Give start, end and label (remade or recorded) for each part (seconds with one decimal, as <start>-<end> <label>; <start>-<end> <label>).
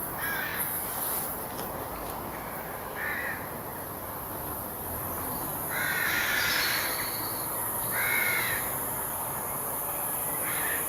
0.0-0.5 remade; 0.5-1.4 recorded; 1.4-5.5 remade; 5.5-8.2 recorded; 8.2-10.9 remade